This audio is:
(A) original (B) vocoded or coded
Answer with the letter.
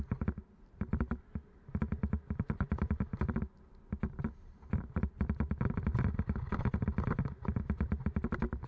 A